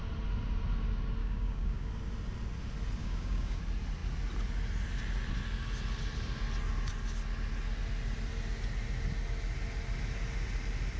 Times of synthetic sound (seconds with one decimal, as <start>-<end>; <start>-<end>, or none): 1.2-1.9; 3.0-3.6